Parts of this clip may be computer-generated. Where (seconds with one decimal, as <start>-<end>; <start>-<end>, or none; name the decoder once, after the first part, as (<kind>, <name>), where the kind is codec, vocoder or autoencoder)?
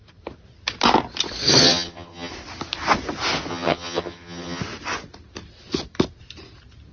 1.6-2.3 (vocoder, HiFi-GAN); 3.5-4.6